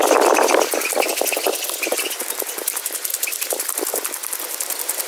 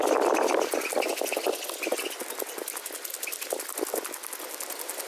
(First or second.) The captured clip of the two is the second